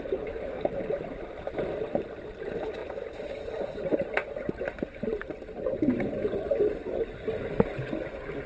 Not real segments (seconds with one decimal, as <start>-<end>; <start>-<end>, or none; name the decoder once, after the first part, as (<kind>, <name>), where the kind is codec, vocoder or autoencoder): none